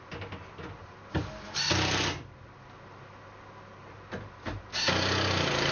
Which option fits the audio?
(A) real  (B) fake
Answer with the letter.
A